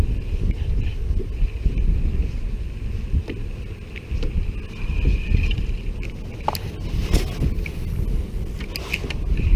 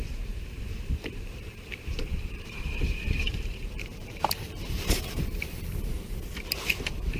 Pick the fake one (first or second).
second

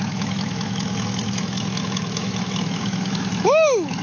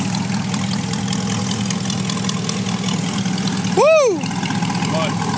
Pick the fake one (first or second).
first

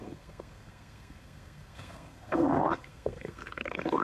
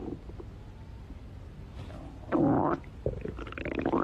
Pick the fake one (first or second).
first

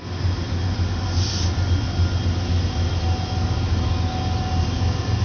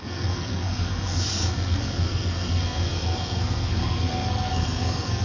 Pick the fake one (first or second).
second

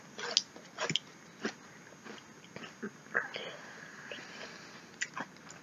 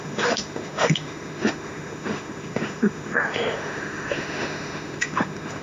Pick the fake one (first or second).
second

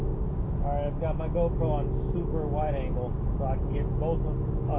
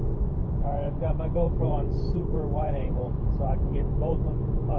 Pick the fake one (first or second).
second